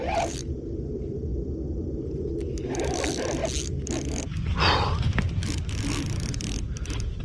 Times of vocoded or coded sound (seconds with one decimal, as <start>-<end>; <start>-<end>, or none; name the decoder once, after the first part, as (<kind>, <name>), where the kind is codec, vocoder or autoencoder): none